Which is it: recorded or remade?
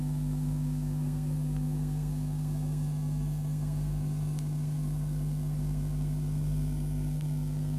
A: remade